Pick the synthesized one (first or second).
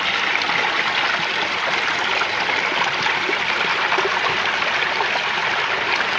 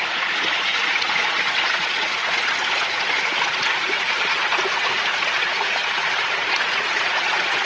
second